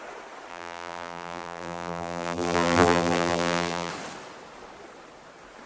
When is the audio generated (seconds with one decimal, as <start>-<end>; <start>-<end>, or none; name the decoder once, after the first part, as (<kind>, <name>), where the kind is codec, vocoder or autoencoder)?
0.5-3.9 (vocoder, BigVGAN v2)